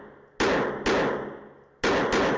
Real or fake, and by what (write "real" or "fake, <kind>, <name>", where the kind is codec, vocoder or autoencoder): real